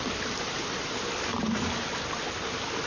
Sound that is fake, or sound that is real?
real